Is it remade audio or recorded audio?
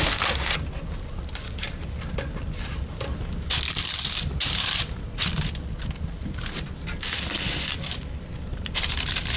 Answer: recorded